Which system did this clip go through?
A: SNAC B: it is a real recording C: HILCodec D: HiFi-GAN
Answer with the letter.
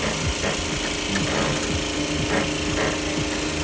B